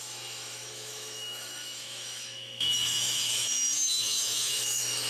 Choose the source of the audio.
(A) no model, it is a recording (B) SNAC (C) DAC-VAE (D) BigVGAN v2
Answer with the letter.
C